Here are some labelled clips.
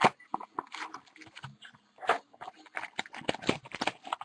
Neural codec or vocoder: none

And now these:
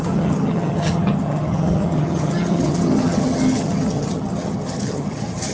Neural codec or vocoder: vocoder, HiFi-GAN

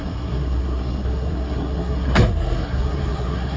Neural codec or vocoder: codec, SNAC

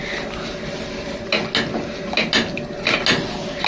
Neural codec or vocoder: none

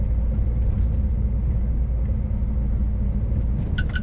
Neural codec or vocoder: none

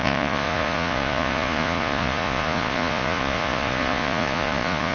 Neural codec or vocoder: vocoder, Vocos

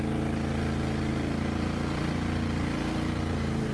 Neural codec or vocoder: none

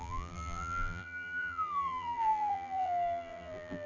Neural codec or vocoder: vocoder, BigVGAN v2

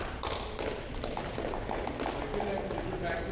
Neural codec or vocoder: none